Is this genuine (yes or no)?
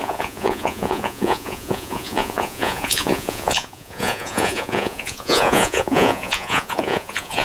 no